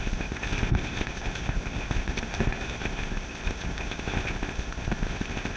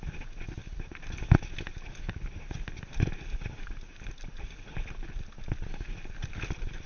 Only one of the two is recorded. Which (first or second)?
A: second